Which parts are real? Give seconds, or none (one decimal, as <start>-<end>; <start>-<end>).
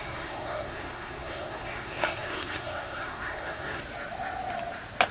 3.8-5.1